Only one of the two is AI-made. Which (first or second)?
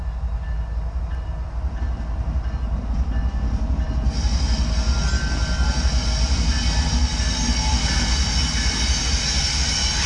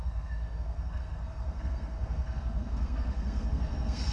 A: second